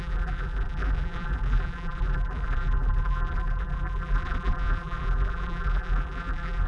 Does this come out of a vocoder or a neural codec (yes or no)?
yes